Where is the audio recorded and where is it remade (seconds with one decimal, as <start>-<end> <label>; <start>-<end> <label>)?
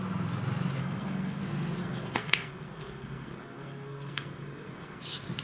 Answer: 0.0-0.8 recorded; 0.8-1.4 remade; 1.4-1.8 recorded; 1.8-5.0 remade; 5.0-5.4 recorded